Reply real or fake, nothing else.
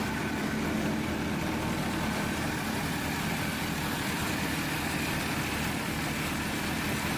real